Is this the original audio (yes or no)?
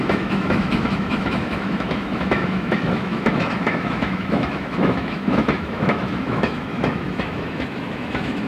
no